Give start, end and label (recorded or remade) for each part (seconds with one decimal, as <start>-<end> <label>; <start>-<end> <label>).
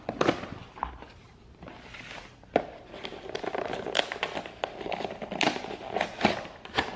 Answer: 0.0-7.0 recorded